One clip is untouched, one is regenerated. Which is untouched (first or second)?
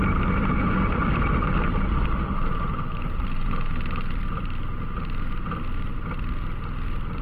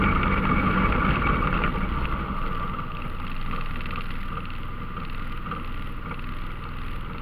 second